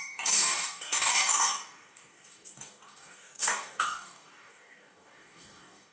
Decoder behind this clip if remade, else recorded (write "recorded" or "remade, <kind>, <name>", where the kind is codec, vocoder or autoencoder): remade, codec, DAC